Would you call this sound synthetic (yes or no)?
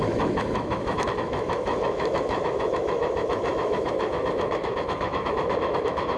yes